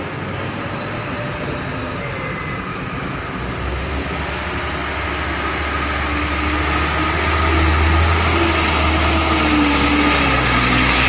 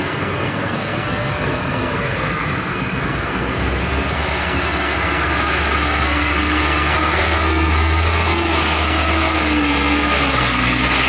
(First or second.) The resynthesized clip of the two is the second